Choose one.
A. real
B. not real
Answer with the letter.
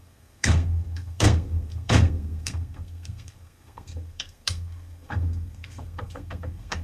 B